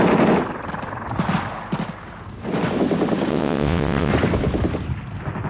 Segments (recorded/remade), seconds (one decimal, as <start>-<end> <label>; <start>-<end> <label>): 0.0-3.3 recorded; 3.3-4.1 remade; 4.1-5.5 recorded